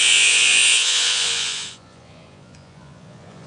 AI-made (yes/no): yes